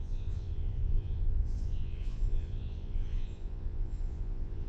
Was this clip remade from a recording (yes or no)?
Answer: yes